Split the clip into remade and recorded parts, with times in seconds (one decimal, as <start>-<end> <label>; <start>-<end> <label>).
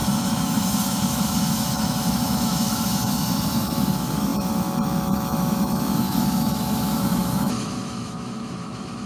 0.0-9.1 remade